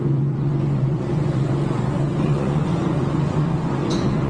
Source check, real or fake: fake